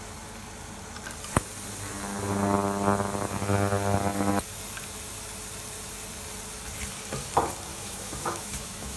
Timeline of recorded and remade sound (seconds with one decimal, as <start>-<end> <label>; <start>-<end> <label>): 0.0-7.7 recorded; 7.7-9.0 remade